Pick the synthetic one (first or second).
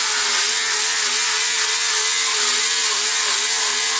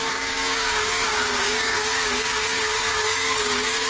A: second